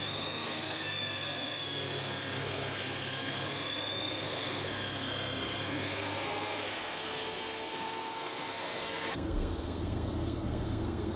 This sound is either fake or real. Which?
fake